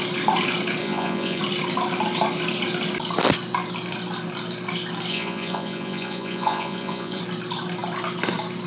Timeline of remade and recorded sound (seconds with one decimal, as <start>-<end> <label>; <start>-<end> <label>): 0.0-0.8 recorded; 0.8-1.4 remade; 1.4-5.1 recorded; 5.1-7.2 remade; 7.2-8.7 recorded